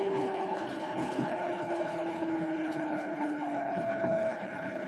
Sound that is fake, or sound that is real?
fake